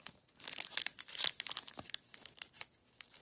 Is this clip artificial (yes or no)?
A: no